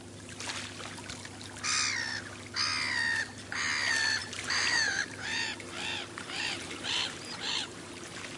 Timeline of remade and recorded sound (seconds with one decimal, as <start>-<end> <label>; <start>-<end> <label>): 0.0-4.2 recorded; 4.2-8.4 remade